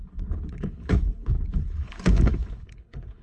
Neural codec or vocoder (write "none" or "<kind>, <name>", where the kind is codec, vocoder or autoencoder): codec, HILCodec